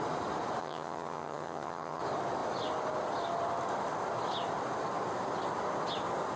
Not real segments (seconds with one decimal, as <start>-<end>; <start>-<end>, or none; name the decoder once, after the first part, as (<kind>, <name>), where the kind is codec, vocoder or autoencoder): 0.6-2.0 (vocoder, HiFi-GAN)